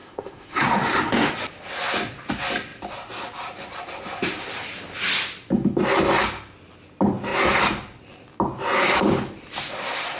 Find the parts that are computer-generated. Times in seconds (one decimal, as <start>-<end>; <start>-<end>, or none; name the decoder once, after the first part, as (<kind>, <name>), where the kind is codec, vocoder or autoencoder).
0.0-1.3 (autoencoder, DAC-VAE)